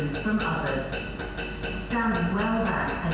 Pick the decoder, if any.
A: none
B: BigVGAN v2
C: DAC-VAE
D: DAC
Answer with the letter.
A